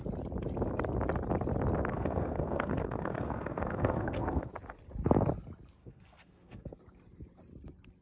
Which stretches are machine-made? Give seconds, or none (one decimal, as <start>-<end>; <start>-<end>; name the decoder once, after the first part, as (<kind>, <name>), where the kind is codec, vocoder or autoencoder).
1.9-4.5 (codec, SNAC); 5.8-6.8